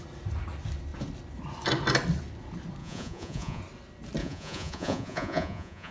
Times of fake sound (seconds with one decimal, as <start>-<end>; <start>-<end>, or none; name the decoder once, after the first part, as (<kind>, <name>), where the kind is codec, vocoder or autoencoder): 2.8-3.6 (vocoder, Vocos); 4.2-5.9